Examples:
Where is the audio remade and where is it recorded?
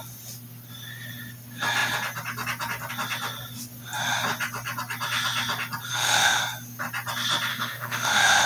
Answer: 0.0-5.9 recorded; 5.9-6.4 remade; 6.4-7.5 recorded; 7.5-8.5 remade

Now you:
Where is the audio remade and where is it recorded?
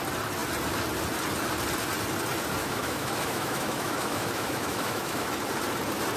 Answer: 0.0-2.6 recorded; 2.6-5.3 remade; 5.3-6.2 recorded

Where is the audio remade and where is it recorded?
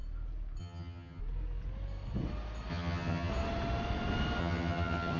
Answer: 0.0-0.6 recorded; 0.6-1.2 remade; 1.2-2.7 recorded; 2.7-3.3 remade; 3.3-4.4 recorded; 4.4-5.2 remade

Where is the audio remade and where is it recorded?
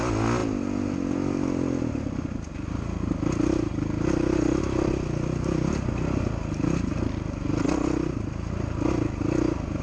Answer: 0.0-9.8 recorded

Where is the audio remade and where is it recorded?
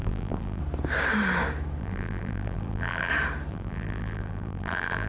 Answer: 0.0-0.6 remade; 0.6-1.8 recorded; 1.8-3.1 remade; 3.1-3.5 recorded; 3.5-5.1 remade